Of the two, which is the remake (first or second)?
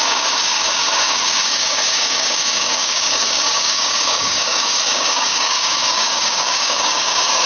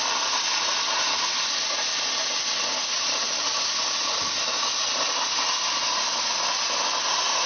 first